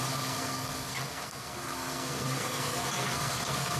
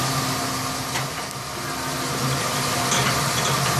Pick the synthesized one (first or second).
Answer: first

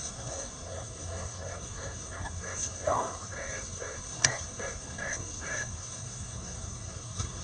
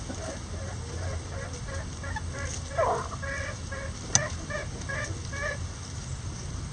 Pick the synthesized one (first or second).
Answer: first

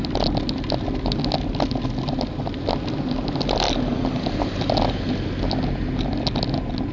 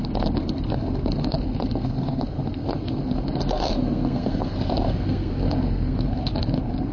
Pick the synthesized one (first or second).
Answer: second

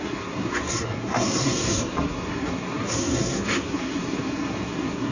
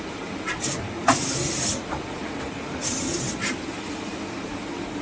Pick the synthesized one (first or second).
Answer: first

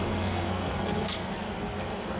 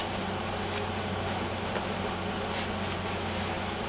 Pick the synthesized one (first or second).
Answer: first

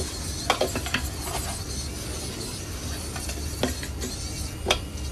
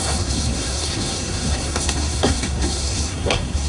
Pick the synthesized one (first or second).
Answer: second